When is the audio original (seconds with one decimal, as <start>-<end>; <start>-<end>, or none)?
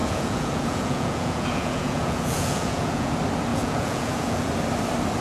3.1-3.5; 4.5-5.2